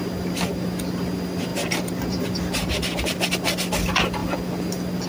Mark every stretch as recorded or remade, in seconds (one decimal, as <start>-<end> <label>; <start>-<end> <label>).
0.0-1.5 recorded; 1.5-3.0 remade; 3.0-5.1 recorded